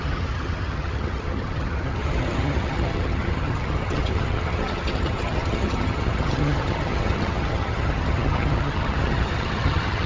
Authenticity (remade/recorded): remade